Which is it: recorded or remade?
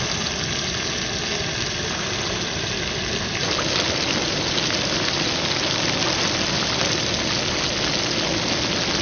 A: recorded